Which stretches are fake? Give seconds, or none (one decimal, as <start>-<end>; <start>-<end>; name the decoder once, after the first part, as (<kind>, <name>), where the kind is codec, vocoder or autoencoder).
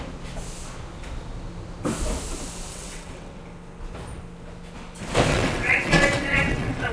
2.7-3.4 (vocoder, WaveNeXt); 5.3-6.9